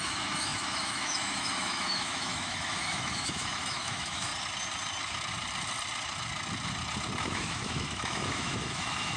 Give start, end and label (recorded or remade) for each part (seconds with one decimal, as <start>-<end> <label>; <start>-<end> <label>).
0.0-4.3 remade; 4.3-7.2 recorded; 7.2-9.2 remade